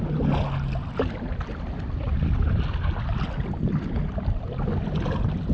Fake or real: real